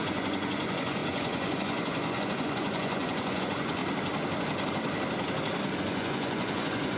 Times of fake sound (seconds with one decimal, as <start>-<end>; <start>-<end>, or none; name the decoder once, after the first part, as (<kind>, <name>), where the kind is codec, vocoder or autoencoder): 0.0-3.8 (vocoder, Vocos); 5.8-7.0